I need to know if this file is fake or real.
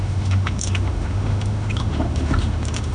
fake